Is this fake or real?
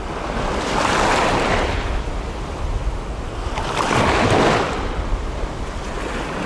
real